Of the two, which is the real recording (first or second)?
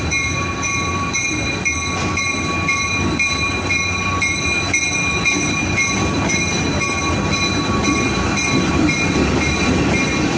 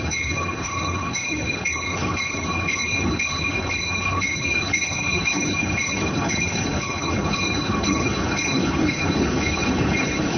first